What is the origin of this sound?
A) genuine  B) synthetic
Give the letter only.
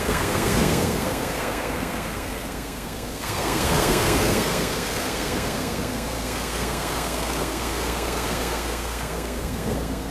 B